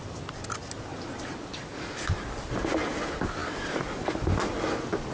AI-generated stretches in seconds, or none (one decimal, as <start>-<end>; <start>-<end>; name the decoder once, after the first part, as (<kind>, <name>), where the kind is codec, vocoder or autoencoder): 0.9-2.3 (vocoder, BigVGAN v2); 3.4-4.3